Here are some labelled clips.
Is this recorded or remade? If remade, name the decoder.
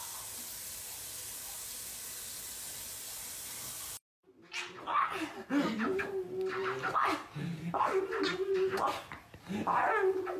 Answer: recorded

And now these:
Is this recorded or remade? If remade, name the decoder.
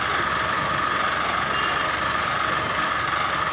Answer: recorded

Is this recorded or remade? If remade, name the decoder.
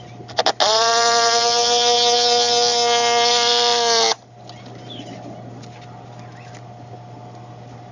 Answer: recorded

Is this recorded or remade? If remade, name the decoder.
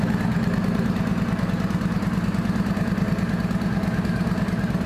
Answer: recorded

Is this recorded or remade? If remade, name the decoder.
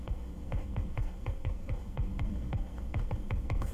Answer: remade, codec, SNAC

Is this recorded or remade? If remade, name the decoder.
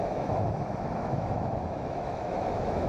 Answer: remade, autoencoder, DAC-VAE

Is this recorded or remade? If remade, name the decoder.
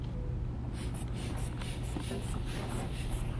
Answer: recorded